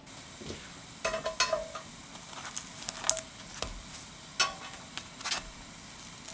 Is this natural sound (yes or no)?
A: yes